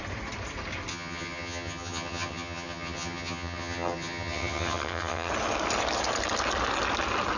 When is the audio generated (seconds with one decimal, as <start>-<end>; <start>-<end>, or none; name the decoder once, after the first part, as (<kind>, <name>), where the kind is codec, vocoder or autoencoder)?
0.9-5.3 (vocoder, HiFi-GAN)